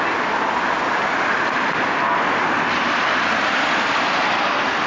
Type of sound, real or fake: fake